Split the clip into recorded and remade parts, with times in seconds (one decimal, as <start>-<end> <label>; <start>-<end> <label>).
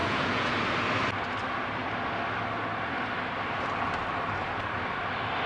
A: 0.0-0.5 remade; 0.5-5.5 recorded